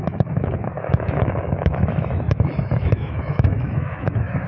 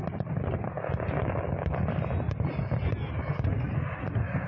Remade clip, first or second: first